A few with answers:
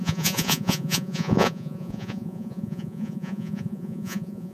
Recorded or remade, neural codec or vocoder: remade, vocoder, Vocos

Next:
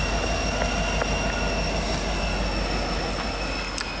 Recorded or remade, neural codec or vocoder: recorded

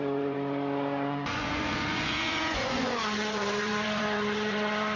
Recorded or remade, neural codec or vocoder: remade, vocoder, Vocos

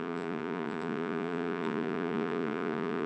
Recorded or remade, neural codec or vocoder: remade, vocoder, Vocos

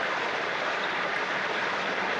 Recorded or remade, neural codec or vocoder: recorded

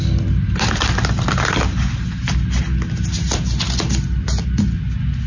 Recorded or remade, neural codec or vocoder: recorded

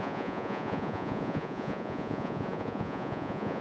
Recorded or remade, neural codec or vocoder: remade, vocoder, Vocos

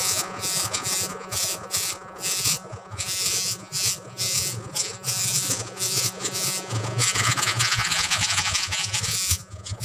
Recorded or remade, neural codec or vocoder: remade, vocoder, Vocos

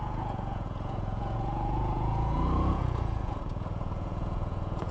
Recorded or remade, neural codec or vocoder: remade, vocoder, Vocos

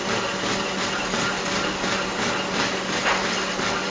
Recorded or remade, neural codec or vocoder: recorded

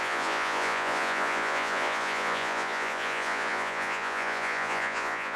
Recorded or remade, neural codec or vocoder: remade, vocoder, Vocos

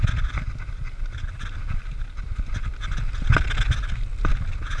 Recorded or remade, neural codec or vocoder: recorded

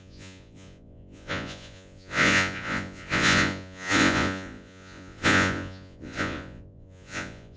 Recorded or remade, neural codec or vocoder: remade, vocoder, Vocos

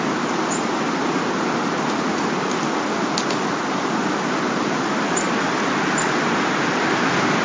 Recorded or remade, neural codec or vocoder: recorded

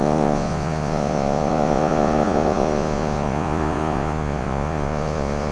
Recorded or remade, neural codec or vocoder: remade, vocoder, Vocos